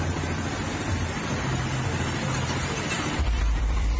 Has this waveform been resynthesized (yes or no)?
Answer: yes